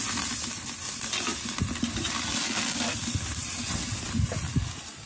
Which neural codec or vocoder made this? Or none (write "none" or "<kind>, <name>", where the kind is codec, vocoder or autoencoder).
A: none